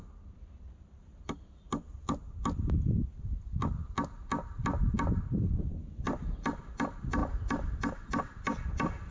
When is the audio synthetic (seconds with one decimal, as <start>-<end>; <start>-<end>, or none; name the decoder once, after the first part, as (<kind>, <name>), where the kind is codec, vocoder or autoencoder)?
none